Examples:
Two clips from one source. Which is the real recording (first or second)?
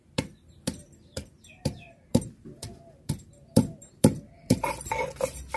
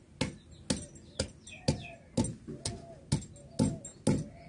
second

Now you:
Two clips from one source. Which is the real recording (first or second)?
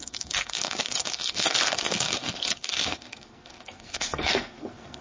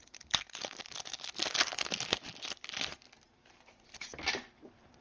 second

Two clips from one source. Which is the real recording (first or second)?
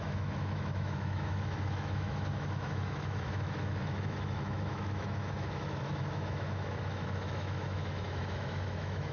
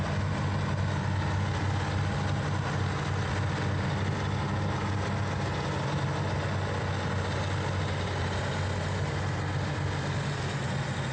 second